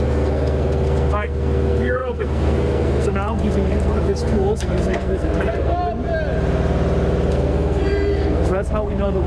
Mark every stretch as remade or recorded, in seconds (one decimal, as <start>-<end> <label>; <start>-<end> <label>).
0.0-5.8 remade; 5.8-7.3 recorded; 7.3-9.3 remade